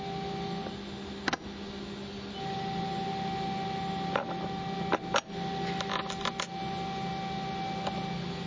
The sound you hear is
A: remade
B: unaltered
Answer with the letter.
B